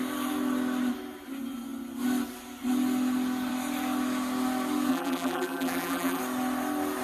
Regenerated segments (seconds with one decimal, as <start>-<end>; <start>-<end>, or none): 4.9-6.2